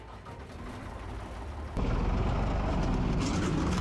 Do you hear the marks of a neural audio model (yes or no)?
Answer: no